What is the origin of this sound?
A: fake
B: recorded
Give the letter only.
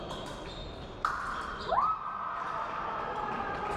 B